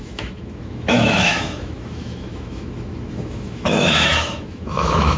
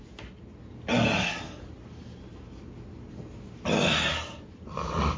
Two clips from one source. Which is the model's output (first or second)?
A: first